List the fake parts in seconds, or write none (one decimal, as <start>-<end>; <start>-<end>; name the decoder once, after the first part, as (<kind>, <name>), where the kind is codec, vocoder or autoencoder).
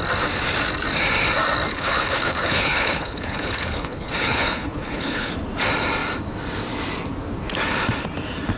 1.7-5.3 (codec, HILCodec)